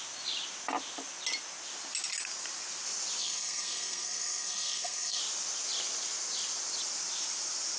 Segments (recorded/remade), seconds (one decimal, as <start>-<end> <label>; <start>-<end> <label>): 0.0-3.2 recorded; 3.2-5.2 remade; 5.2-7.8 recorded